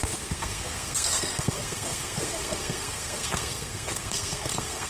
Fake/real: fake